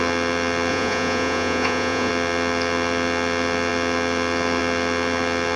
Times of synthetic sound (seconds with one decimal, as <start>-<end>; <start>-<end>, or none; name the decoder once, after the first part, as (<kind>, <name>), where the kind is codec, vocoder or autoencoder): 0.7-2.1 (vocoder, Vocos)